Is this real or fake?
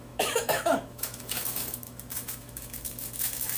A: fake